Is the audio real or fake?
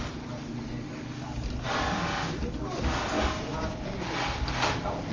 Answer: real